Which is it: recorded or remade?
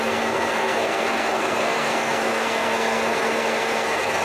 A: remade